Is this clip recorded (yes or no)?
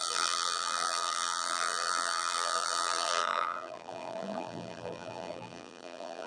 no